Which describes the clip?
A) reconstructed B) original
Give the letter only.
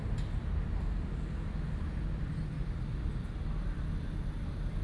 B